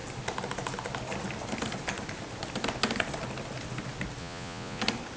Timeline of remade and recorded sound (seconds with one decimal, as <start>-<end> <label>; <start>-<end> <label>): 0.0-4.2 recorded; 4.2-4.8 remade; 4.8-5.2 recorded